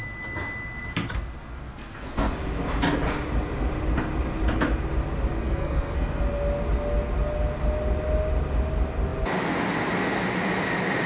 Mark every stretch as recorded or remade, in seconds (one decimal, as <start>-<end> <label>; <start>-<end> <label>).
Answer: 0.0-1.6 recorded; 1.6-2.3 remade; 2.3-5.4 recorded; 5.4-6.2 remade; 6.2-11.1 recorded

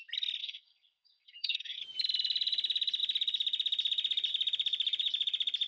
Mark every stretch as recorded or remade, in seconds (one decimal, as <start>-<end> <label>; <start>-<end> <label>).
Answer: 0.0-0.4 recorded; 0.4-1.8 remade; 1.8-5.7 recorded

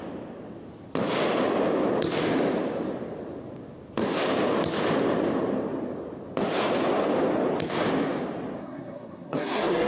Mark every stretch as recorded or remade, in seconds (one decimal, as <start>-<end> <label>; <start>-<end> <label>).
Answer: 0.0-8.6 recorded; 8.6-9.9 remade

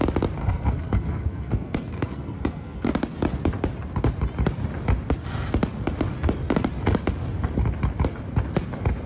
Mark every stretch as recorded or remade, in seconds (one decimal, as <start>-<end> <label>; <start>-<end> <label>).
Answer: 0.0-0.4 recorded; 0.4-2.9 remade; 2.9-9.1 recorded